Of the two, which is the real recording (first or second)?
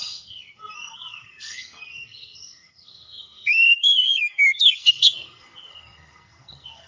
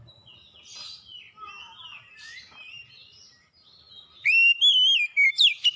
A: second